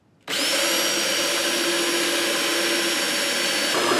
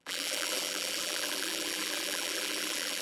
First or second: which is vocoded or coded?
second